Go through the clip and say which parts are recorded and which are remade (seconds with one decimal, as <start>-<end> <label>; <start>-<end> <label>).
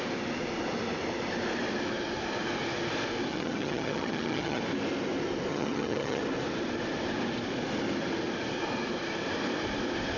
0.0-3.3 recorded; 3.3-4.6 remade; 4.6-5.5 recorded; 5.5-6.2 remade; 6.2-10.2 recorded